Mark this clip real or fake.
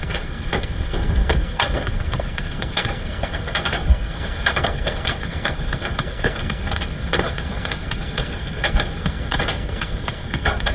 fake